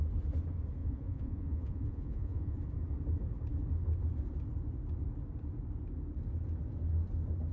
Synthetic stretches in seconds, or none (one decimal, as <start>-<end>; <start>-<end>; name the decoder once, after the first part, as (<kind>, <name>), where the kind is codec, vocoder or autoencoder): 0.8-2.6 (vocoder, Vocos)